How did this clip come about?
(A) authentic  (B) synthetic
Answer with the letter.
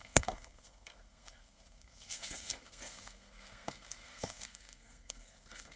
B